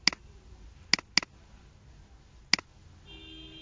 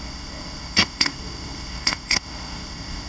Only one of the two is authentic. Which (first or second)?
first